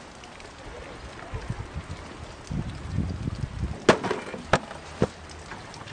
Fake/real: real